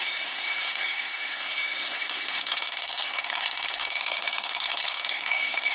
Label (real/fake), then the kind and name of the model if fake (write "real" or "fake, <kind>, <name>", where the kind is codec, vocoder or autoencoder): fake, codec, SNAC